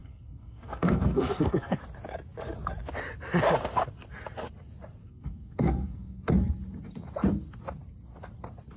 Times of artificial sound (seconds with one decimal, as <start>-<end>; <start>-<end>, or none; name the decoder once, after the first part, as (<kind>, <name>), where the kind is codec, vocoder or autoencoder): 0.0-1.8 (codec, SNAC); 5.0-6.3